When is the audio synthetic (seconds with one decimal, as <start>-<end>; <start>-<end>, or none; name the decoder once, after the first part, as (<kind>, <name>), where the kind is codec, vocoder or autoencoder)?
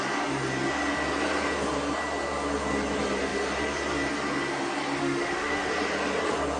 5.0-5.7 (autoencoder, DAC-VAE)